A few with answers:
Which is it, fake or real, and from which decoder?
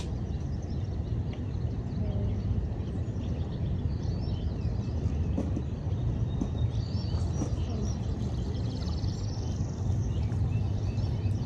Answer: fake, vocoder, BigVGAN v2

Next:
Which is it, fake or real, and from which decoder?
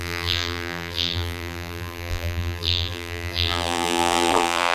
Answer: fake, vocoder, BigVGAN v2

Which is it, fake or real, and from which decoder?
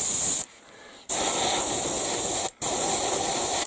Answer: real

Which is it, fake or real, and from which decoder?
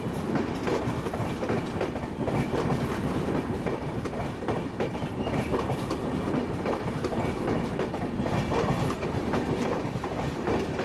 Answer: fake, vocoder, BigVGAN v2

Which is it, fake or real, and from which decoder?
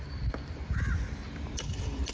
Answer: fake, vocoder, BigVGAN v2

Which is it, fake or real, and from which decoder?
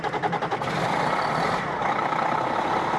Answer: fake, vocoder, BigVGAN v2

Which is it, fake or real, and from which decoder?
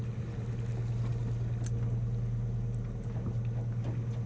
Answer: real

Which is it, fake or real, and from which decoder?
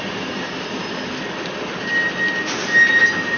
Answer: real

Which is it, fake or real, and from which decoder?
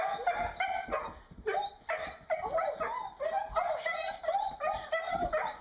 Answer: real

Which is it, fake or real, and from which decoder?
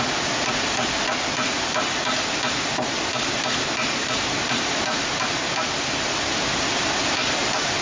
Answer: real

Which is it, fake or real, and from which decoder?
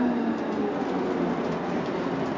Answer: real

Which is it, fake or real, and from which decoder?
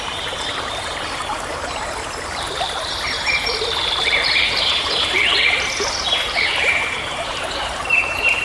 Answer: fake, vocoder, BigVGAN v2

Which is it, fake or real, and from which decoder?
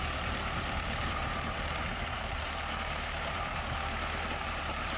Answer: fake, vocoder, BigVGAN v2